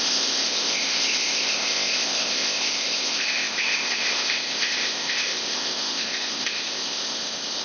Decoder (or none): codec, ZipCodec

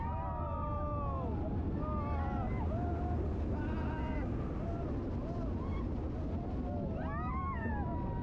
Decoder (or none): none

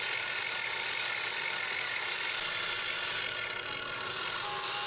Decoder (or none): none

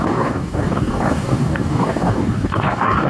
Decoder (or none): codec, DAC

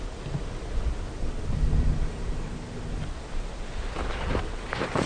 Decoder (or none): none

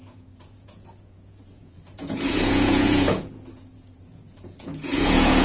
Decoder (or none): vocoder, Vocos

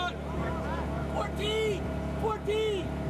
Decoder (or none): none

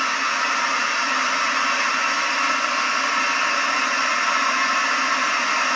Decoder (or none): none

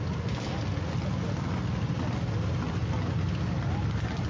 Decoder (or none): none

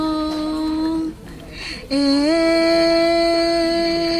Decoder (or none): none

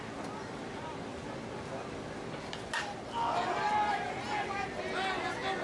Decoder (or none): none